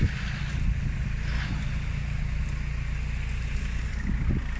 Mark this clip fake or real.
real